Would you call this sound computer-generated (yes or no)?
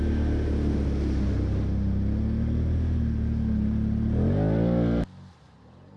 no